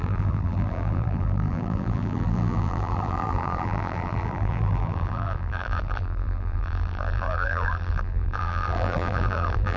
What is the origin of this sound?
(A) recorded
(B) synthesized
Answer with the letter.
B